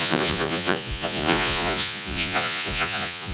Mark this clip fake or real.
fake